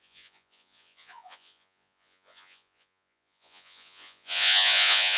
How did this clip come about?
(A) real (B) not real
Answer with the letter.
B